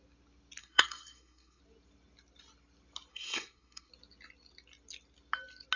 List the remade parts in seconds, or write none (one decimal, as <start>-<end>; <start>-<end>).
0.6-1.6; 3.1-3.9